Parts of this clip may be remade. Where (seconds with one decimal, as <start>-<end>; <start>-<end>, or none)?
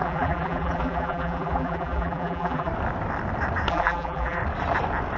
0.0-2.7; 3.7-4.4